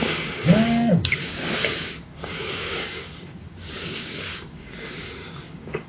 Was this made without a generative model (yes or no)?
no